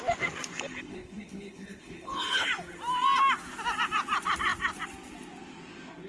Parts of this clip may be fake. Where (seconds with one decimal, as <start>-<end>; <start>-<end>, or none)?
0.5-2.5